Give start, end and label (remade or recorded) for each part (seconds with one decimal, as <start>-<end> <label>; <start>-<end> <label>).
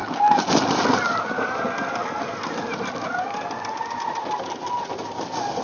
0.0-5.6 recorded